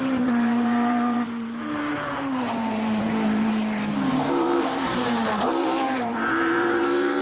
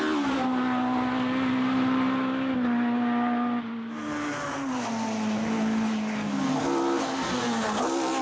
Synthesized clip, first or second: first